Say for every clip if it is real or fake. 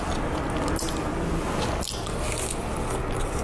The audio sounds real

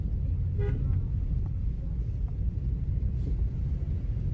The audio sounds real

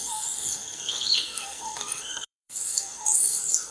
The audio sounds fake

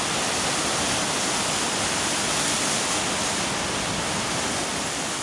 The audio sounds real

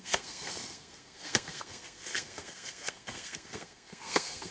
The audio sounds fake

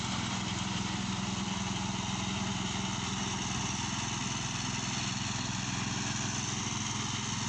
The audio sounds real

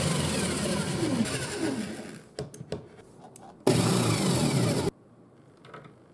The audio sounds real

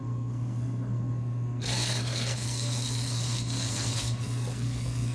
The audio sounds fake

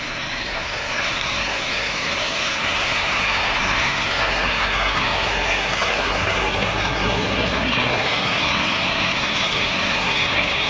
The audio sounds fake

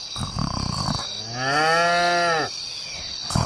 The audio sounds real